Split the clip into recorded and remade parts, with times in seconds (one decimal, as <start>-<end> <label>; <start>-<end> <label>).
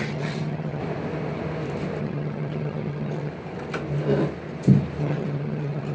0.0-0.8 remade; 0.8-2.0 recorded; 2.0-3.3 remade; 3.3-5.0 recorded; 5.0-5.9 remade